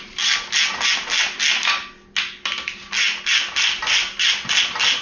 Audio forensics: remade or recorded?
recorded